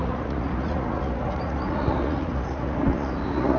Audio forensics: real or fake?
fake